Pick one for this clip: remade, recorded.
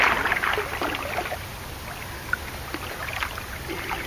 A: recorded